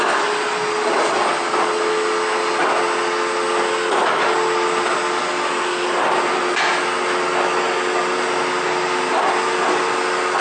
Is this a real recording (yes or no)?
yes